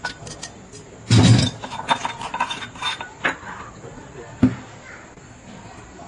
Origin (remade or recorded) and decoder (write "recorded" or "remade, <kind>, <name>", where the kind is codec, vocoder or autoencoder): recorded